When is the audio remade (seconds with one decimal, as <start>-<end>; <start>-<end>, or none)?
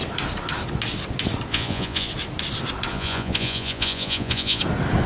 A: 1.5-2.1; 2.9-4.6